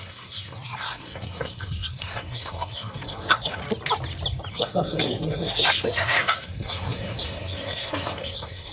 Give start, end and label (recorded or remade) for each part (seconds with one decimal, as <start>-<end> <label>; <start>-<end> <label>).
0.0-3.6 remade; 3.6-4.5 recorded; 4.5-8.7 remade